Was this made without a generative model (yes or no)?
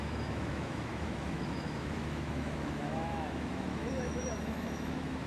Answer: no